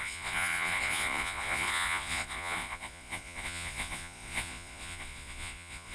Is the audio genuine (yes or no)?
no